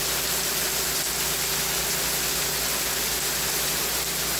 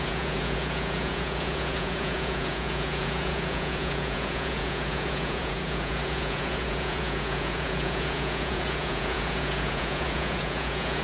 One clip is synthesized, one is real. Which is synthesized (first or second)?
second